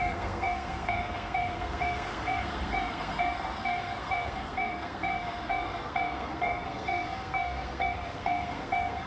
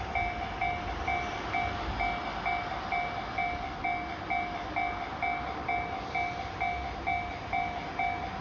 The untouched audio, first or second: second